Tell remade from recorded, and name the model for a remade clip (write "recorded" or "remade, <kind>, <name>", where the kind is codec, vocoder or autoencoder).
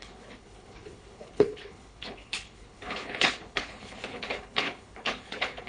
remade, codec, HILCodec